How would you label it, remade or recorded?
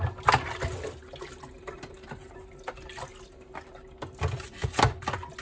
recorded